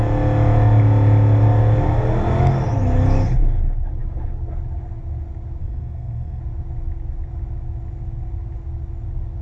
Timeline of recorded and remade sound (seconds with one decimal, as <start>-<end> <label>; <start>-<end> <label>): 0.0-5.6 recorded; 5.6-6.4 remade; 6.4-9.4 recorded